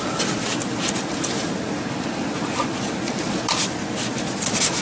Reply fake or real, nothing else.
real